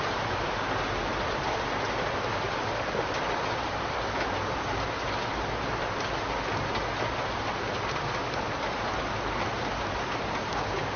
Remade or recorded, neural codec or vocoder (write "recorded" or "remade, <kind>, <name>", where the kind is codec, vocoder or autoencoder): recorded